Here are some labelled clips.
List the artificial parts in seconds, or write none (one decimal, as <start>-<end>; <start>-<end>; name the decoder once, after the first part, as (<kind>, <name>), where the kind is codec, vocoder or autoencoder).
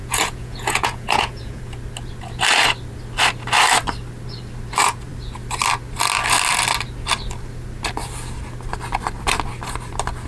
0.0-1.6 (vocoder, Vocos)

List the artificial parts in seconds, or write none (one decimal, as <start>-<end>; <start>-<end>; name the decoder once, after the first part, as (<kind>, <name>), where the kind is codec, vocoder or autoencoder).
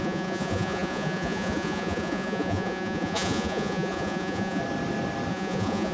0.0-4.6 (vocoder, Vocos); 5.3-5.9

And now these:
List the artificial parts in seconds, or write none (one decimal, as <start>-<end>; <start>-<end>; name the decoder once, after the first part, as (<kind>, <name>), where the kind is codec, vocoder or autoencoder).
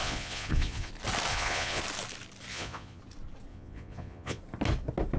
0.0-0.9 (vocoder, Vocos); 1.3-1.8; 2.5-3.0; 3.5-4.4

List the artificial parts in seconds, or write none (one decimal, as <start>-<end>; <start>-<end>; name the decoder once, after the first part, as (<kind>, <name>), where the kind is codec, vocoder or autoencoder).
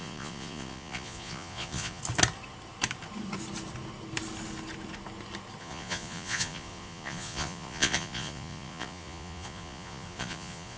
0.0-2.0 (vocoder, Vocos); 5.6-10.8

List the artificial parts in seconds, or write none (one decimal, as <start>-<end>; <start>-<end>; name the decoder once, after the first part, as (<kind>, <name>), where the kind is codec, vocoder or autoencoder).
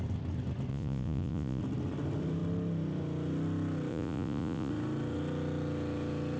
0.7-1.6 (vocoder, Vocos); 3.9-4.7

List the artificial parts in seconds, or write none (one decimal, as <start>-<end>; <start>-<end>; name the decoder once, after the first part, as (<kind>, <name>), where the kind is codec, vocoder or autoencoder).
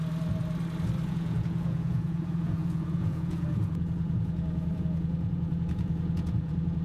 1.1-6.8 (vocoder, Vocos)